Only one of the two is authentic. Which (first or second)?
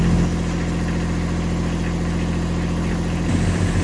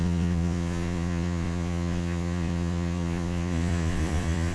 first